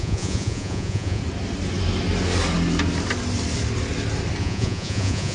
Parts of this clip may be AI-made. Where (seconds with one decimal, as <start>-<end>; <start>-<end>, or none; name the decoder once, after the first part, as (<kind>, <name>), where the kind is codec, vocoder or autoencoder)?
0.0-1.2 (vocoder, Vocos); 4.4-5.3